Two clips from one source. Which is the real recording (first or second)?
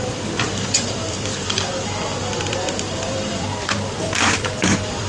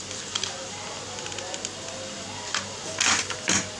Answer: second